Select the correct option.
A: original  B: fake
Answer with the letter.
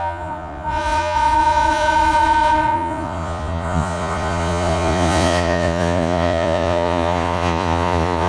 B